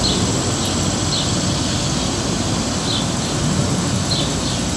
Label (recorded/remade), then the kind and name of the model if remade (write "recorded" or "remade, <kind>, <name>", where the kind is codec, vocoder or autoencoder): recorded